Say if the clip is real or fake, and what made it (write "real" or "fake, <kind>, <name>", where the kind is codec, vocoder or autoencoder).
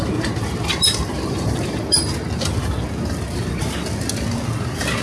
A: real